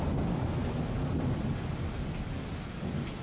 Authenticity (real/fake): real